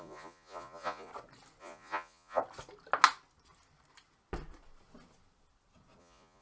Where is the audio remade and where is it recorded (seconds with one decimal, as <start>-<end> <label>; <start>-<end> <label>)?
0.0-1.1 remade; 1.1-1.6 recorded; 1.6-2.4 remade; 2.4-6.0 recorded; 6.0-6.4 remade